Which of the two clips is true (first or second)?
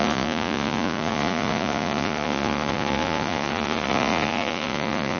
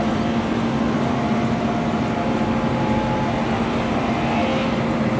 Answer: second